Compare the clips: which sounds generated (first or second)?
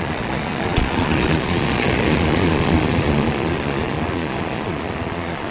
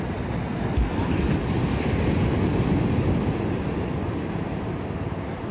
first